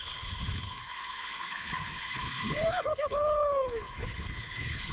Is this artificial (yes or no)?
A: yes